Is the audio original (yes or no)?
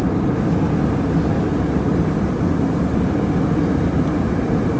yes